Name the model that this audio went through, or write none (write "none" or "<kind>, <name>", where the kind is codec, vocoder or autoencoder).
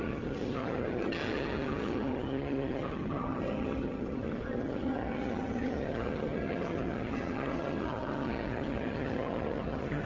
vocoder, HiFi-GAN